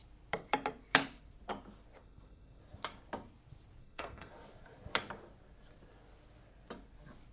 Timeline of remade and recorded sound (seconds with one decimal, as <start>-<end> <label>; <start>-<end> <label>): 0.0-2.0 recorded; 2.0-2.6 remade; 2.6-3.8 recorded; 3.8-4.3 remade; 4.3-7.3 recorded

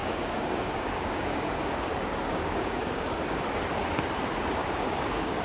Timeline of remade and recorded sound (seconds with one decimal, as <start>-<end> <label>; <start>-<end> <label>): 0.0-3.2 remade; 3.2-4.6 recorded; 4.6-5.4 remade

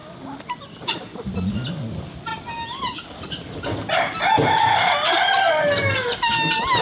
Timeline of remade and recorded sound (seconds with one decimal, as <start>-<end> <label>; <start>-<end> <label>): 0.0-6.8 recorded

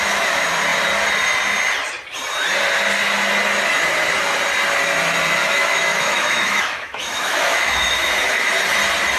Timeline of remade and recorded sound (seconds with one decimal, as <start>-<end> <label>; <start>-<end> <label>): 0.0-5.4 recorded; 5.4-8.5 remade; 8.5-9.2 recorded

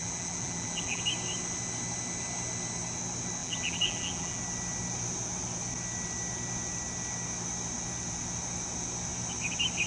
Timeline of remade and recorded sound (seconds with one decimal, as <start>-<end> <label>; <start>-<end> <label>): 0.0-1.0 remade; 1.0-3.4 recorded; 3.4-4.4 remade; 4.4-9.9 recorded

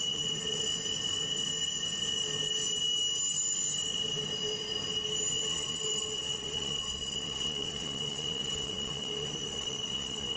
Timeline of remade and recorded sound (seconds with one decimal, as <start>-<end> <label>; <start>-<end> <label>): 0.0-0.7 remade; 0.7-5.5 recorded; 5.5-10.4 remade

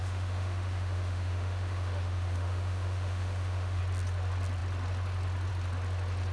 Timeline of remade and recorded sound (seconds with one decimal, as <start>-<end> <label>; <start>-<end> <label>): 0.0-3.8 remade; 3.8-6.3 recorded